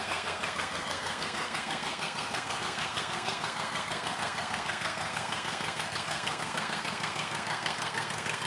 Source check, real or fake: fake